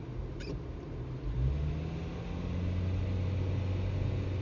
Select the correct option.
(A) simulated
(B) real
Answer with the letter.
B